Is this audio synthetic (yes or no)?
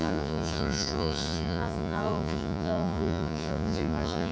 yes